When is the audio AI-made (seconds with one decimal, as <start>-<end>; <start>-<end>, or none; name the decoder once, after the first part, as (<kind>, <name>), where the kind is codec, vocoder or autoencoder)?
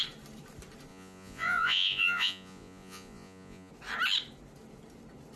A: 0.9-3.7 (vocoder, Vocos)